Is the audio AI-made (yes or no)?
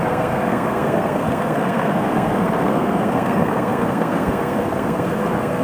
yes